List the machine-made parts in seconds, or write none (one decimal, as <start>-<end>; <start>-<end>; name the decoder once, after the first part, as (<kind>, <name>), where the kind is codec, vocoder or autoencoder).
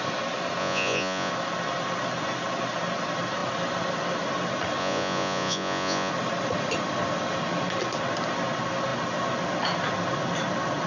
0.6-1.3 (vocoder, Vocos); 4.8-6.1